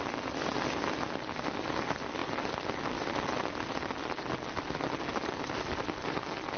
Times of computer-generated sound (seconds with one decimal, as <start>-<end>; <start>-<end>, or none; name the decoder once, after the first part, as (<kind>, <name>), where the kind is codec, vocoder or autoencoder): none